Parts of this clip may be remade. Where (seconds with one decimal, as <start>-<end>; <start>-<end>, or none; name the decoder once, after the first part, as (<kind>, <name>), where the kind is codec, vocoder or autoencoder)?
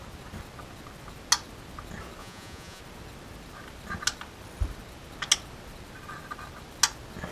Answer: 2.2-2.8 (vocoder, Vocos)